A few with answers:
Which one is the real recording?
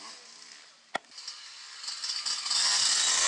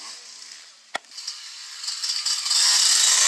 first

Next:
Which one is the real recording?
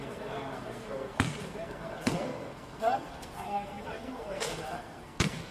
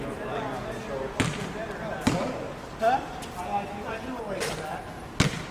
second